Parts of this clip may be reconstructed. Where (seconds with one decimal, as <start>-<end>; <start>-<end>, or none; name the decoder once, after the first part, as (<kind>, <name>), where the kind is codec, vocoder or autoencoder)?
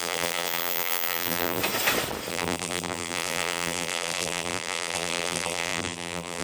0.0-1.6 (vocoder, BigVGAN v2); 2.3-6.4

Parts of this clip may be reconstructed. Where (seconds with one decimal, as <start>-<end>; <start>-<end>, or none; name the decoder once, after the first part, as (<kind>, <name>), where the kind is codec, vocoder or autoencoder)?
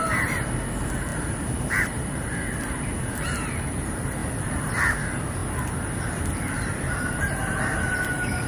0.0-5.4 (vocoder, BigVGAN v2); 6.5-8.5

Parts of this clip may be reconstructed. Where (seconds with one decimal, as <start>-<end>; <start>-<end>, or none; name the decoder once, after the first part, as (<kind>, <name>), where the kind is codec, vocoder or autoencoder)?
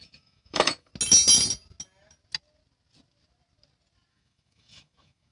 0.0-0.9 (autoencoder, DAC-VAE); 4.1-5.3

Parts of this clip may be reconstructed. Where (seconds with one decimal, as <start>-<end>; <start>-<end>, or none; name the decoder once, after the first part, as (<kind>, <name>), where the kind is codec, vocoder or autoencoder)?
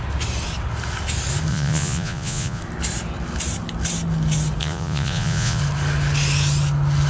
1.5-2.6 (vocoder, Vocos); 4.6-5.6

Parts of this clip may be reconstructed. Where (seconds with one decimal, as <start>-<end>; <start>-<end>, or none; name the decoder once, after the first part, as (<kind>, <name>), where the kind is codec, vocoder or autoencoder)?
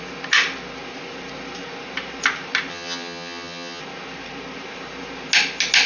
2.7-3.8 (vocoder, HiFi-GAN)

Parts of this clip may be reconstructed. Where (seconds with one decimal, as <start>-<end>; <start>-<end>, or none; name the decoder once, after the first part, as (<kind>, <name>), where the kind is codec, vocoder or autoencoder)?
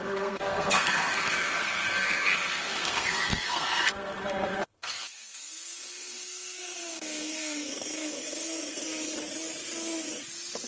0.0-8.8 (codec, SNAC)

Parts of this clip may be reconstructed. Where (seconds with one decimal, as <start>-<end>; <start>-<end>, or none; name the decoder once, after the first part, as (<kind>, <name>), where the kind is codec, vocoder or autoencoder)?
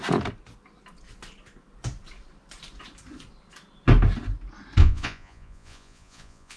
4.8-6.6 (vocoder, Vocos)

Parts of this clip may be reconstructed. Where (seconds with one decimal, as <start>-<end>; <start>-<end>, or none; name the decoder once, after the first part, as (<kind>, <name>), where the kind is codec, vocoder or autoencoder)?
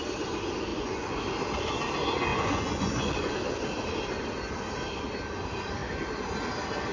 0.7-1.2 (vocoder, Vocos); 2.3-3.3